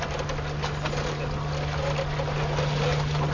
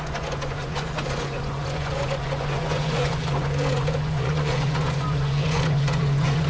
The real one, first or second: first